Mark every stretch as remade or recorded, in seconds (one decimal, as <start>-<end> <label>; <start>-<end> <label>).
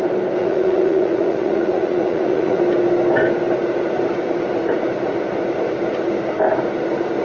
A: 0.0-0.4 recorded; 0.4-2.6 remade; 2.6-7.2 recorded